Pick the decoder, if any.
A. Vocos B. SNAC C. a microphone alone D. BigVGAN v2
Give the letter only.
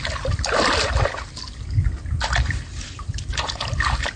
C